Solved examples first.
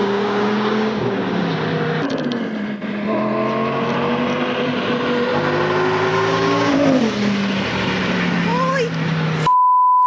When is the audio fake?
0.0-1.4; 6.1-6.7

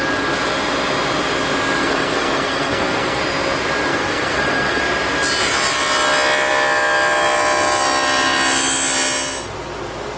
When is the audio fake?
1.8-3.2; 3.9-4.8

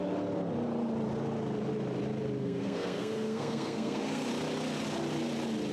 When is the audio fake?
2.4-4.3